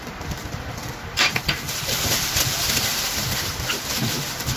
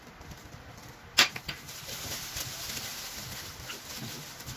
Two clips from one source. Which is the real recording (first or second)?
second